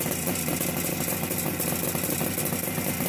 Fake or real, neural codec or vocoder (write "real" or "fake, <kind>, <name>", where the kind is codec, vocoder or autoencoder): real